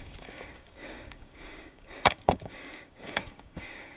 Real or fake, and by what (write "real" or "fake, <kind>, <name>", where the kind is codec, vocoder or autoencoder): fake, codec, DAC